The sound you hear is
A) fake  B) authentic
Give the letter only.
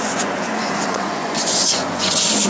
A